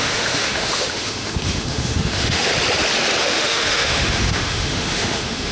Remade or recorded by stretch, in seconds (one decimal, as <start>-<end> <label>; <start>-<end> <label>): 0.0-2.5 remade; 2.5-3.2 recorded; 3.2-5.5 remade